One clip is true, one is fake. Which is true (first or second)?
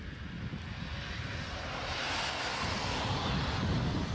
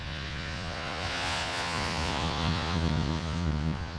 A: first